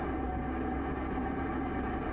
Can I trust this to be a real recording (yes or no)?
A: yes